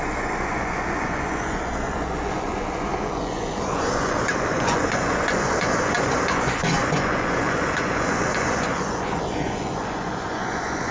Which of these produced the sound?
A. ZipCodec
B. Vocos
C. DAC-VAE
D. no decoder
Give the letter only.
B